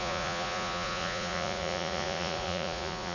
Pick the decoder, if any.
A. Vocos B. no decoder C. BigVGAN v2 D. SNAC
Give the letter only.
A